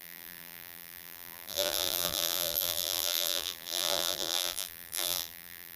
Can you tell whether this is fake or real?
fake